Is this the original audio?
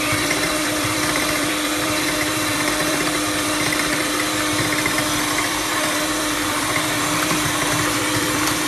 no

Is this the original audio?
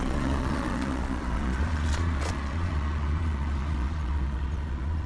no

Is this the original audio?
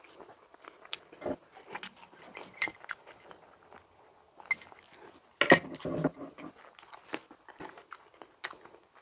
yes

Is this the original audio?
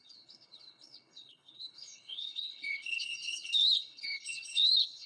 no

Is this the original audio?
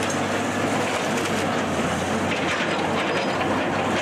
yes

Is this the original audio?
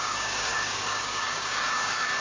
no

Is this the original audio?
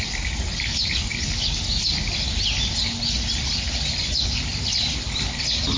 yes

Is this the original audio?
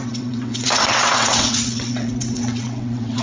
no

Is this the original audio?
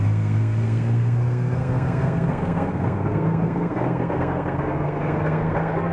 no